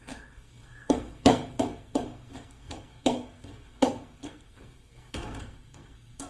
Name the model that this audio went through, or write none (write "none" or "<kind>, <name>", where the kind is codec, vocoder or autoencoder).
codec, SNAC